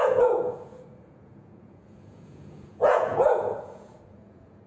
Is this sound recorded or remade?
remade